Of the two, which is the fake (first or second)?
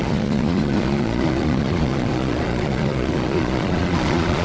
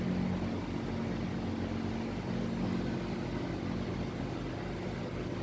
first